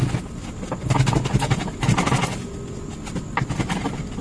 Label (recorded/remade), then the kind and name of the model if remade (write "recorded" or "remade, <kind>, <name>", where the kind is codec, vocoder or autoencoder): recorded